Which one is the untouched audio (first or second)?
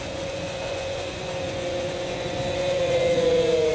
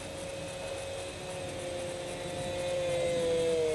second